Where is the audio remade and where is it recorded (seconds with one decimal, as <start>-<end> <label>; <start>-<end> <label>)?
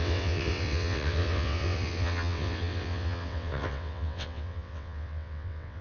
0.0-5.8 remade